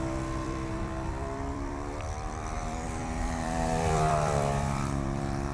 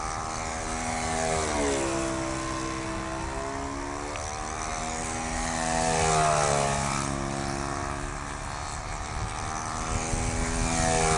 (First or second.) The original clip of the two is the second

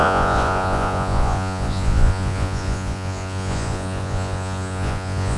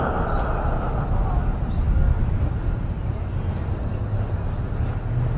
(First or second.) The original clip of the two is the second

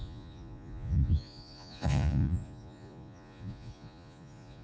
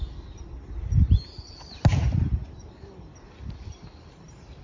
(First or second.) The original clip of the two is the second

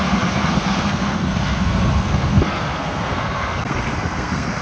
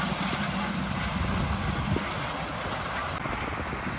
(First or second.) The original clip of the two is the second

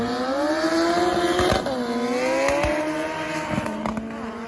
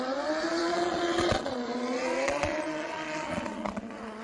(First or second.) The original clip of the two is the first